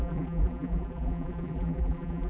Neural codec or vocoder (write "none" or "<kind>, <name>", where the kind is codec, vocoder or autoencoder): vocoder, BigVGAN v2